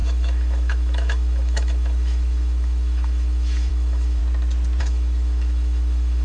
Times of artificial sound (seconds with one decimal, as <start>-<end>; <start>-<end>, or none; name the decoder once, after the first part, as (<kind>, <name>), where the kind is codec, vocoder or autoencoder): 0.0-4.2 (autoencoder, DAC-VAE); 4.8-6.2